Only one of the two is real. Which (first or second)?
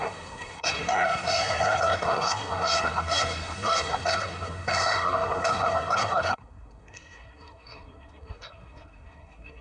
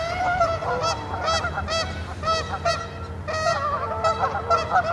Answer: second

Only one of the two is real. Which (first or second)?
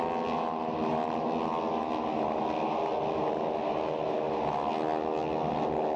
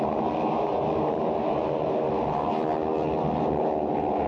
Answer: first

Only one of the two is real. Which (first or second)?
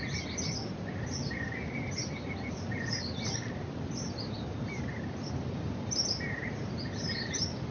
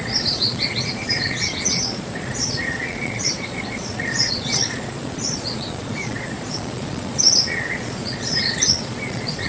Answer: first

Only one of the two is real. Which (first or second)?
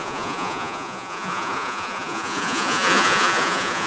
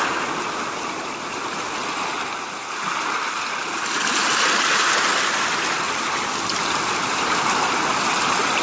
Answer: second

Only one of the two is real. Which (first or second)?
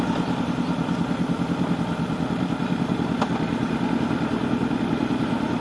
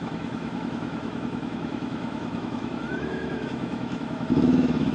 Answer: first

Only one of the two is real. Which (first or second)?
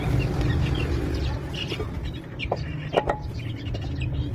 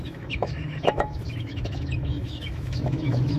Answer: first